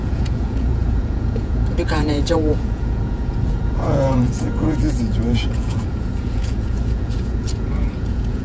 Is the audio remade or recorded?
remade